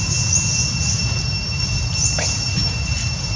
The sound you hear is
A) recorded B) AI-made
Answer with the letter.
A